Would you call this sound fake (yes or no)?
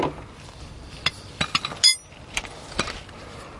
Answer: no